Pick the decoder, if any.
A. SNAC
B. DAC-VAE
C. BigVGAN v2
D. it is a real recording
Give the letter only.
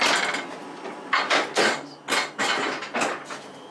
D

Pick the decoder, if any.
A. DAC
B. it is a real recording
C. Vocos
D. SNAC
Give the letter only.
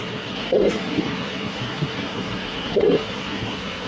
D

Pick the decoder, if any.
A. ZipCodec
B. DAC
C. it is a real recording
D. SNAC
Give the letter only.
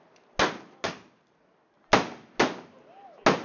C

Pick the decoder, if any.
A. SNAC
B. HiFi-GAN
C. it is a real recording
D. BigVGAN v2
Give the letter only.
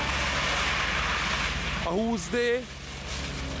C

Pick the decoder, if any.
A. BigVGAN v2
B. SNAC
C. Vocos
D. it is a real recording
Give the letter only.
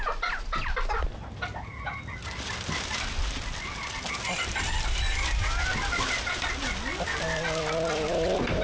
D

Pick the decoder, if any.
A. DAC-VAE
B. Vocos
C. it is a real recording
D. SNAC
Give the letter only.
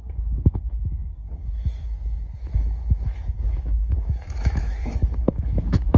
A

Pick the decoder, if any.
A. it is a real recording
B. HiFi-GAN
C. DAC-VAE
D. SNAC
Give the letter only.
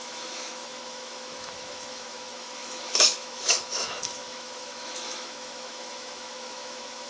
C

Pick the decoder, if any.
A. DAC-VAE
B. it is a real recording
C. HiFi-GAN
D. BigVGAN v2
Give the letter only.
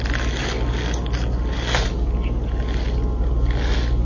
B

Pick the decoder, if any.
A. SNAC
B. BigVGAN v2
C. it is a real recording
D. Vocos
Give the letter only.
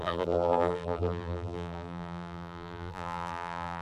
B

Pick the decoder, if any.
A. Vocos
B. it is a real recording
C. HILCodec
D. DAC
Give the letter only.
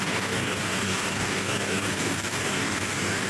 D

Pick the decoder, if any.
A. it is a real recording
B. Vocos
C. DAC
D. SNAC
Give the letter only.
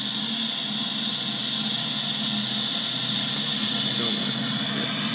A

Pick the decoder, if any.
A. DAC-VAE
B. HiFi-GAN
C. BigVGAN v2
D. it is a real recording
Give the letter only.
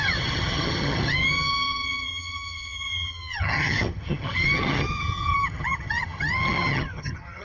B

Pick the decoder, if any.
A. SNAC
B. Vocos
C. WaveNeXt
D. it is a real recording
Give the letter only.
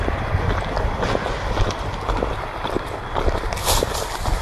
D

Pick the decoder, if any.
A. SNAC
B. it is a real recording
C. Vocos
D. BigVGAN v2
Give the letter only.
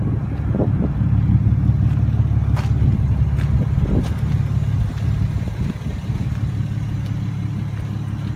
B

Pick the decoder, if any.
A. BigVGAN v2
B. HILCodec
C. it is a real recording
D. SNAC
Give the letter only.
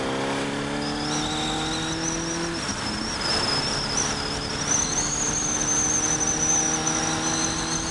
C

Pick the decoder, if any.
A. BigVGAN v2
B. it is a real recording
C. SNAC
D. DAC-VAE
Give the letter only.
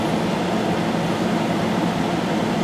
B